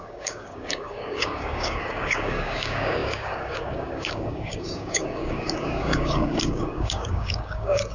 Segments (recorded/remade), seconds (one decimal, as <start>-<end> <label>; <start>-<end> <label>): 0.0-7.9 remade